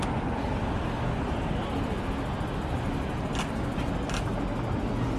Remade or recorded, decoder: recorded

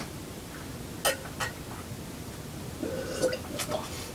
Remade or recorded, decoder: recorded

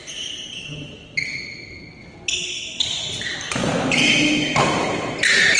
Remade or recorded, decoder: recorded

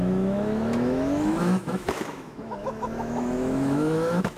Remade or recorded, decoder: remade, autoencoder, DAC-VAE